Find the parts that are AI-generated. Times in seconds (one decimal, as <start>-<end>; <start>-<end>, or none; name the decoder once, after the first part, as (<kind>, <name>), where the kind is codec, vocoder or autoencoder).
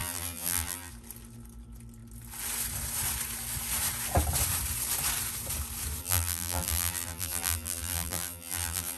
0.0-0.9 (vocoder, BigVGAN v2); 6.0-9.0